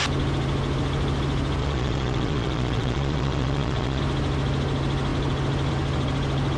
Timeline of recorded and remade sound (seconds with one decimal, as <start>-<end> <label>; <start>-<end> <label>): 0.0-1.6 recorded; 1.6-4.0 remade; 4.0-6.6 recorded